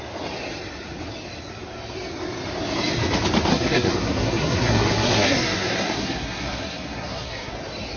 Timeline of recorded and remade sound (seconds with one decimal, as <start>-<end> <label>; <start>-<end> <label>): 0.0-3.5 recorded; 3.5-7.5 remade; 7.5-8.0 recorded